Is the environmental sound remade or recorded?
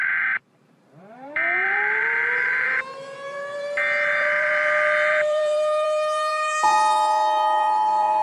remade